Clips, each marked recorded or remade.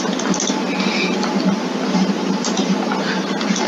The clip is recorded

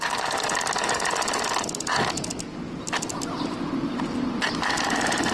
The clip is recorded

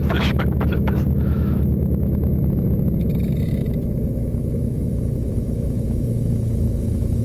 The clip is remade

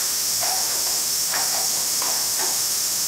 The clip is remade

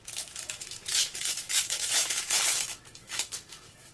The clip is remade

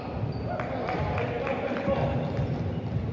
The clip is recorded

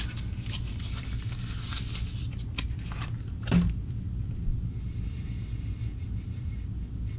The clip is recorded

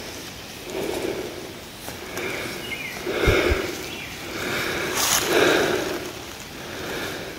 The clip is recorded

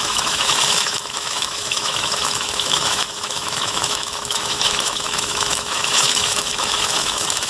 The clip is remade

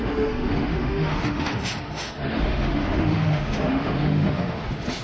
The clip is remade